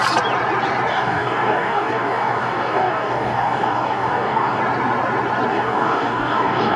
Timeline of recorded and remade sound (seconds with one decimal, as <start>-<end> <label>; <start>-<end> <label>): 0.0-0.9 recorded; 0.9-4.6 remade; 4.6-5.5 recorded; 5.5-6.8 remade